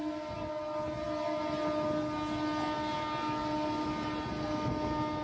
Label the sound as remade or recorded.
recorded